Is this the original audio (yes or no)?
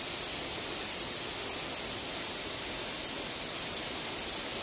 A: yes